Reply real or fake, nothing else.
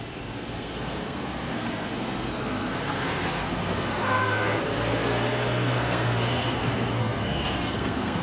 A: fake